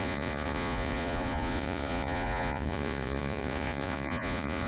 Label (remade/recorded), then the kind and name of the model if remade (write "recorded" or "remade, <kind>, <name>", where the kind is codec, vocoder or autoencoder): remade, vocoder, Vocos